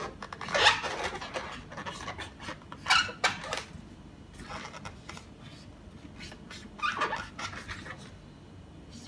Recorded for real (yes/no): yes